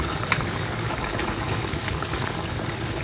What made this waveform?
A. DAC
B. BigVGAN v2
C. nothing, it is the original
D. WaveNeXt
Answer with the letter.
A